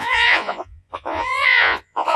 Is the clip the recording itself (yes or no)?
no